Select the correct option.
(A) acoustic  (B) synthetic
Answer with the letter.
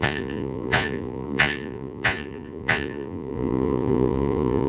B